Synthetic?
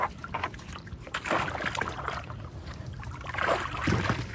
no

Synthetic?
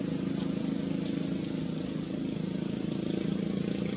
no